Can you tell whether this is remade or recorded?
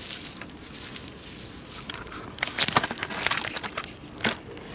recorded